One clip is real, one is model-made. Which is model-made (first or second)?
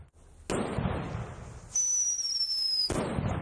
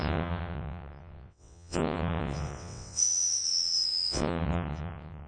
second